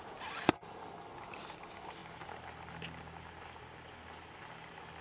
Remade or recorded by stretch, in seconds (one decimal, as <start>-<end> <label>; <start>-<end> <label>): 0.0-5.0 recorded